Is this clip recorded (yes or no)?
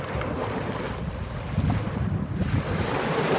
yes